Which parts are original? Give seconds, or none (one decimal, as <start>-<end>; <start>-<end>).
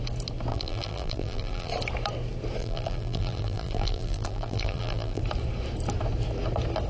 0.0-0.5; 1.7-2.6; 5.2-6.9